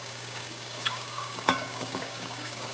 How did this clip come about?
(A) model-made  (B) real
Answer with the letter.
A